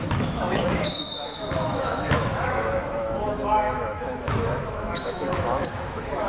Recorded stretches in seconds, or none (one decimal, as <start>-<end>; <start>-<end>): none